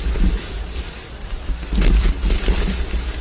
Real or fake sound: real